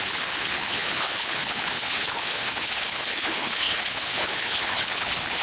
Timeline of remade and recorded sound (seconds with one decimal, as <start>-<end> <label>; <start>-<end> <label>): 0.0-5.4 remade